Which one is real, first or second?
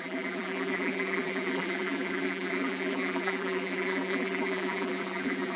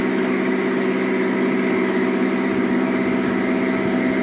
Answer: second